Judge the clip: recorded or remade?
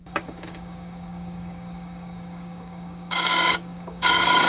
remade